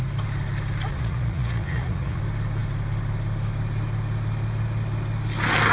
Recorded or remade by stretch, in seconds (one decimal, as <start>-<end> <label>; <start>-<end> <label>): 0.0-0.9 recorded; 0.9-2.2 remade; 2.2-5.7 recorded

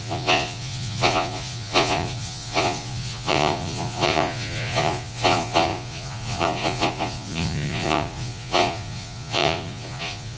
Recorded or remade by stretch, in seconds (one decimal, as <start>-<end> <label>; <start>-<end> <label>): 0.0-10.4 remade

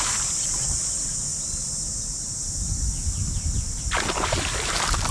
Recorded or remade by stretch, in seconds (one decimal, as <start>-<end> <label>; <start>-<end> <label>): 0.0-5.1 recorded

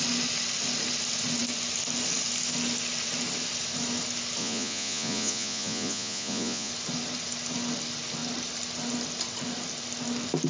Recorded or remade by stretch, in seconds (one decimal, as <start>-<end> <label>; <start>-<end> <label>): 0.0-4.4 recorded; 4.4-6.7 remade; 6.7-10.5 recorded

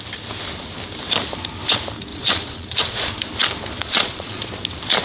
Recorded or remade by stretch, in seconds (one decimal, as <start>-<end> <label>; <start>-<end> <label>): 0.0-2.1 recorded; 2.1-3.1 remade; 3.1-3.8 recorded; 3.8-4.4 remade; 4.4-5.0 recorded

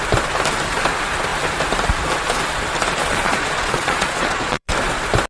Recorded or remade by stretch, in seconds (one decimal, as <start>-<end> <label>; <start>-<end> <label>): 0.0-3.0 recorded; 3.0-4.7 remade; 4.7-5.3 recorded

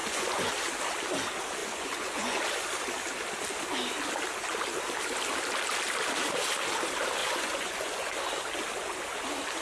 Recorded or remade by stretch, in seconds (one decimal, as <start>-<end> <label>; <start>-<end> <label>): 0.0-0.5 remade; 0.5-1.6 recorded; 1.6-2.4 remade; 2.4-7.2 recorded; 7.2-8.1 remade; 8.1-9.6 recorded

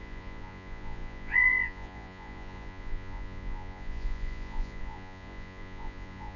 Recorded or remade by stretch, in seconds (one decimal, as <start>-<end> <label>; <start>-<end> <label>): 0.0-6.4 remade